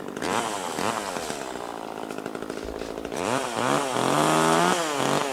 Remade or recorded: recorded